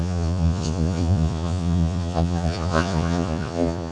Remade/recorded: remade